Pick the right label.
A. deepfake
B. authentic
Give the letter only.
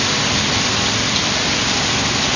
A